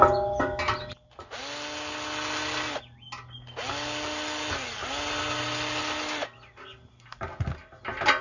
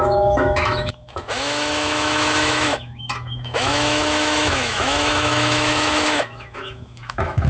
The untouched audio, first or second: first